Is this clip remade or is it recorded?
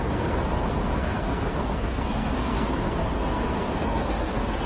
remade